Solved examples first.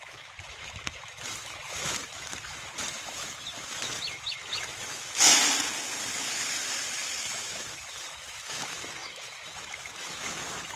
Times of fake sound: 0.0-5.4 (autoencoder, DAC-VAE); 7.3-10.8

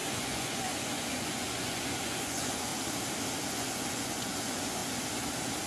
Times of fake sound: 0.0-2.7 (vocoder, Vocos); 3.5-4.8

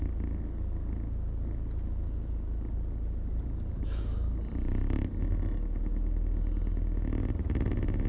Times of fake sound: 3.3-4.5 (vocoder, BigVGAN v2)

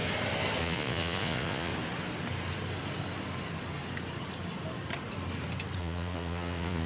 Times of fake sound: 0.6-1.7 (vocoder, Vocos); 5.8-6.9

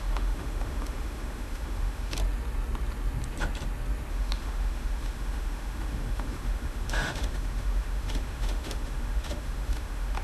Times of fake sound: 0.0-2.2 (autoencoder, DAC-VAE); 4.1-10.2

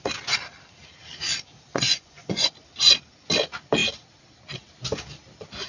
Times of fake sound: 1.7-2.5 (vocoder, Vocos)

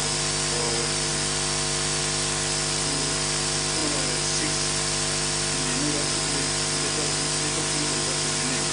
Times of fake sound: 0.0-8.7 (vocoder, BigVGAN v2)